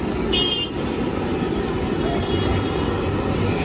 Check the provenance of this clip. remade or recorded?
recorded